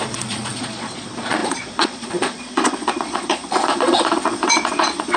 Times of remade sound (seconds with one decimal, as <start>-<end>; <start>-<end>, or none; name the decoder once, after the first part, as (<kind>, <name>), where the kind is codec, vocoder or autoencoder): 0.0-5.2 (vocoder, Vocos)